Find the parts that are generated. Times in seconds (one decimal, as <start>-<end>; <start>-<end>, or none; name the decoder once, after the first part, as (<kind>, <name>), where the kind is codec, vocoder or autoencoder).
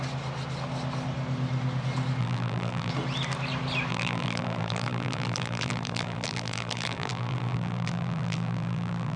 2.2-2.9 (vocoder, BigVGAN v2); 3.9-9.2